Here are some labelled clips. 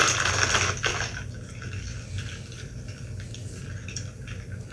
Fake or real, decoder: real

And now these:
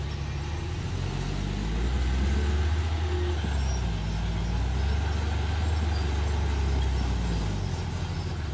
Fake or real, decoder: real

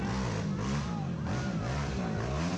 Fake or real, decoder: real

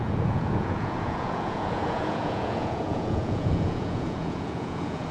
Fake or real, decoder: fake, vocoder, Vocos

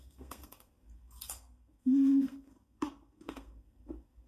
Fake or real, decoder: fake, codec, SNAC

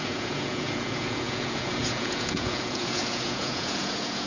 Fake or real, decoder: fake, vocoder, Vocos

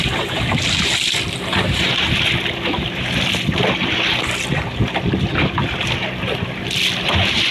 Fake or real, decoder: real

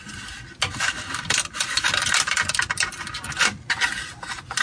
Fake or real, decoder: real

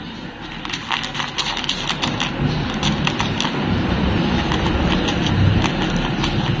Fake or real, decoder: real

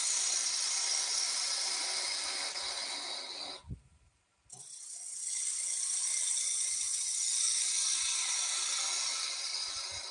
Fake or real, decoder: real